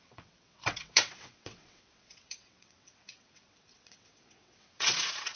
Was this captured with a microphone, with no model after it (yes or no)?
no